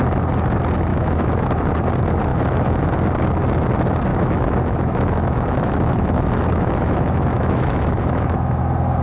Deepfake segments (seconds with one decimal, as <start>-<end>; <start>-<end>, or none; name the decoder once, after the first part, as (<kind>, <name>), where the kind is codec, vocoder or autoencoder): 0.9-1.7 (autoencoder, DAC-VAE); 2.3-2.9; 4.1-8.6